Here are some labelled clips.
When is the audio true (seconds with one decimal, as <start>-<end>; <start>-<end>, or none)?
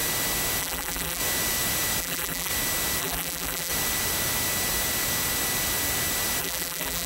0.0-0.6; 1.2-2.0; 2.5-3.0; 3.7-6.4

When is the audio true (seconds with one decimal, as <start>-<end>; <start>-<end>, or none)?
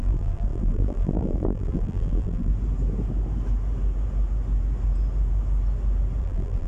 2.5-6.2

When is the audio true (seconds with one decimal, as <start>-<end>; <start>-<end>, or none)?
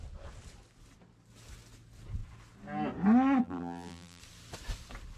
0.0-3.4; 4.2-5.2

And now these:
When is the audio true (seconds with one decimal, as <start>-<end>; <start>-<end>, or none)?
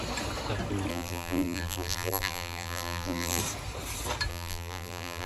0.0-0.9; 3.4-4.3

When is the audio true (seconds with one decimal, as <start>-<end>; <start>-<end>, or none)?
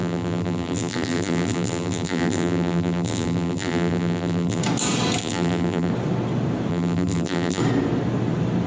4.6-5.2; 5.9-6.7; 7.6-8.7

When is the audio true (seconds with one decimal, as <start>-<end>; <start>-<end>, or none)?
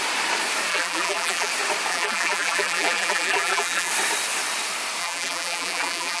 0.0-0.7; 1.5-1.9; 3.9-5.0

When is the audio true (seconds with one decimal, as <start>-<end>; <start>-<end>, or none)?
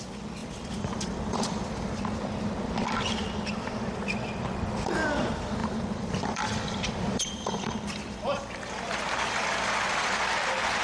0.0-0.4; 2.0-5.6; 10.2-10.8